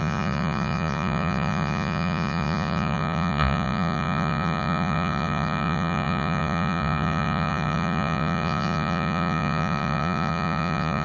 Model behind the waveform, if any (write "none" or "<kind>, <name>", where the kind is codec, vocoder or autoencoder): vocoder, Vocos